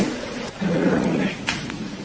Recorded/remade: remade